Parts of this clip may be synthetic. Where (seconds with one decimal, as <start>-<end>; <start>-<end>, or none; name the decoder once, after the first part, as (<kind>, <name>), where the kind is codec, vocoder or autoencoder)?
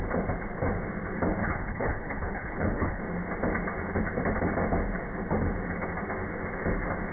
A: 1.4-3.0 (codec, HILCodec)